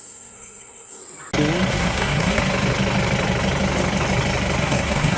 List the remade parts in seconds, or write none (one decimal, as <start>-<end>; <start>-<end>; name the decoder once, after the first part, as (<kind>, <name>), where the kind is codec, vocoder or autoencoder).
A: 0.0-1.0 (codec, SNAC); 1.7-2.4; 4.6-5.2